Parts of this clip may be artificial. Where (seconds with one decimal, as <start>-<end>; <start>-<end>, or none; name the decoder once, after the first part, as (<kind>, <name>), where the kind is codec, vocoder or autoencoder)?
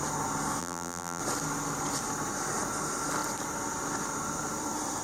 0.6-1.2 (vocoder, BigVGAN v2)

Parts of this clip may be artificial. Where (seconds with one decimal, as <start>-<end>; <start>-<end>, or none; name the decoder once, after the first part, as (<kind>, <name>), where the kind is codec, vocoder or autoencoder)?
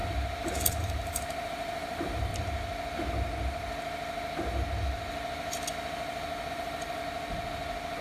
0.7-2.3 (vocoder, BigVGAN v2); 6.5-7.0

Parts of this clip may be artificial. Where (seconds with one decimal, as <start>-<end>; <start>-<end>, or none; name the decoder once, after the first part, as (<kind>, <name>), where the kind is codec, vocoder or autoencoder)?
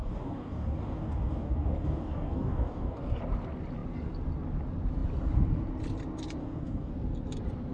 0.0-3.2 (codec, DAC); 6.4-6.9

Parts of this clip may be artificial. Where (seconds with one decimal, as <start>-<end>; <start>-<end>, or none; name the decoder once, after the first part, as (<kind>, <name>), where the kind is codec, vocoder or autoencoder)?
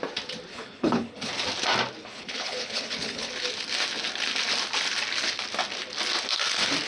0.5-1.3 (codec, HILCodec); 2.0-3.3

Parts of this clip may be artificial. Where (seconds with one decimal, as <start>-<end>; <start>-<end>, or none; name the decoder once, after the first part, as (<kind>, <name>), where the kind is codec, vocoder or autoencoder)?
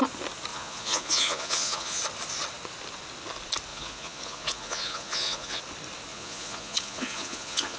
0.5-2.0 (vocoder, Vocos); 3.7-5.6; 6.1-7.8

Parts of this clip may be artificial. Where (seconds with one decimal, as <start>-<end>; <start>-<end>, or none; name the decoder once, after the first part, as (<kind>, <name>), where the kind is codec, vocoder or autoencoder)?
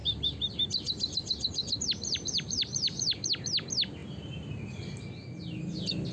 0.0-3.3 (vocoder, BigVGAN v2)